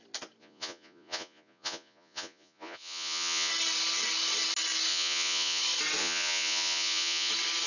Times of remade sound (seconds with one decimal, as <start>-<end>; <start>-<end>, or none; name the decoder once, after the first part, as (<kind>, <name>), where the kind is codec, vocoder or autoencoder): 0.4-3.5 (vocoder, Vocos); 4.9-5.6; 6.0-7.3

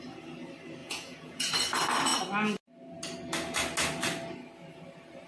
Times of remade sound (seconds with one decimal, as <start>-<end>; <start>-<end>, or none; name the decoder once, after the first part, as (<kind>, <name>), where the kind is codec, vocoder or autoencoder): 0.8-1.5 (vocoder, Vocos)

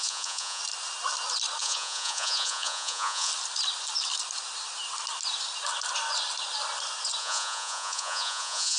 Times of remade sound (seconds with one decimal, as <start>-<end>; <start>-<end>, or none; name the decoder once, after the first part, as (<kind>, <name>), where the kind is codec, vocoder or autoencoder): 0.0-0.6 (vocoder, Vocos); 1.6-3.3; 7.2-8.8

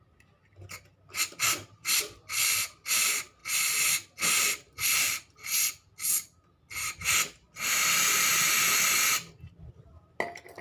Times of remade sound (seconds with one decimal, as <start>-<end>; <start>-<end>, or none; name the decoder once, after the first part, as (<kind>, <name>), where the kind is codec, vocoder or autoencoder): none

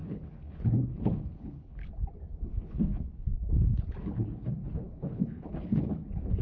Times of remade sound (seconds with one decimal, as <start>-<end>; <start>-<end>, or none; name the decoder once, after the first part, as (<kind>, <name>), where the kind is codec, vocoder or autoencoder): 0.0-1.8 (codec, HILCodec); 2.4-6.4

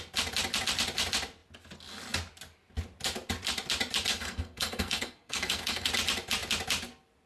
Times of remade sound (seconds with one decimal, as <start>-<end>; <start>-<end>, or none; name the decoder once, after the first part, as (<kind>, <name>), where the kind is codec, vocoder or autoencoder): 4.1-5.9 (codec, SNAC)

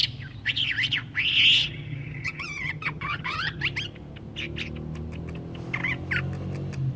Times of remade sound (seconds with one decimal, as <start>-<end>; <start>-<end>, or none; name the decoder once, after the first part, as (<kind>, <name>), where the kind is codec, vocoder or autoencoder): 1.6-3.6 (vocoder, HiFi-GAN)